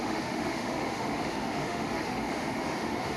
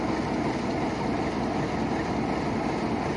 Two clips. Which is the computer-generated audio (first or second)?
first